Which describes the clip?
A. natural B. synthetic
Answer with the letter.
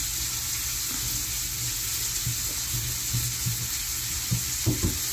A